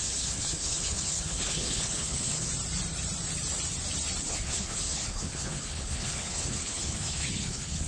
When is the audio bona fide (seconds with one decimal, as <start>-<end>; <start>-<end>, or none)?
2.5-4.2